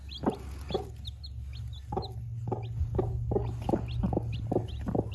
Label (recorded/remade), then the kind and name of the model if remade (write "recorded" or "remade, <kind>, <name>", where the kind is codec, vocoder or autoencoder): recorded